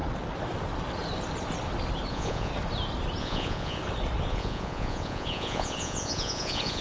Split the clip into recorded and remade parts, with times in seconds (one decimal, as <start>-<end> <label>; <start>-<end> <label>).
0.0-2.1 recorded; 2.1-2.5 remade; 2.5-3.2 recorded; 3.2-3.8 remade; 3.8-4.3 recorded; 4.3-6.8 remade

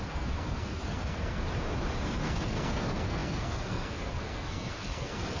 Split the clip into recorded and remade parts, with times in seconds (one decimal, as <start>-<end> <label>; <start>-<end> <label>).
0.0-1.4 remade; 1.4-1.9 recorded; 1.9-5.4 remade

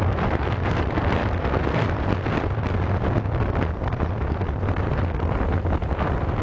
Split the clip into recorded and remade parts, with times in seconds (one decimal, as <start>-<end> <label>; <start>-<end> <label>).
0.0-6.4 recorded

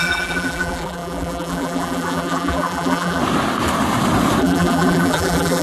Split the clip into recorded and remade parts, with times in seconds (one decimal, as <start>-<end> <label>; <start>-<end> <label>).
0.0-3.2 remade; 3.2-4.4 recorded; 4.4-5.6 remade

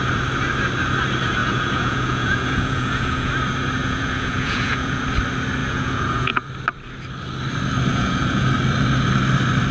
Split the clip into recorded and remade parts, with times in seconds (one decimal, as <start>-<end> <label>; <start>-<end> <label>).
0.0-1.4 recorded; 1.4-3.3 remade; 3.3-3.8 recorded; 3.8-5.0 remade; 5.0-5.6 recorded; 5.6-6.5 remade; 6.5-7.9 recorded; 7.9-8.5 remade; 8.5-9.7 recorded

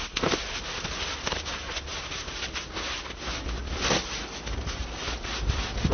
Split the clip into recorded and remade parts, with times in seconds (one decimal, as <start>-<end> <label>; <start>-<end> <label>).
0.0-5.9 recorded

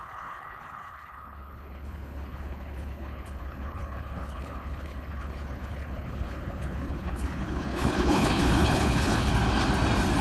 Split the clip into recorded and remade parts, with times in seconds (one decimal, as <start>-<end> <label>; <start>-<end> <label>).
0.0-9.3 remade; 9.3-10.2 recorded